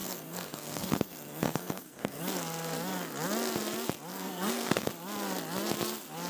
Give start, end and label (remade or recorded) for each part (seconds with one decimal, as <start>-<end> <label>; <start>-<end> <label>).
0.0-2.2 remade; 2.2-4.1 recorded; 4.1-4.9 remade; 4.9-6.3 recorded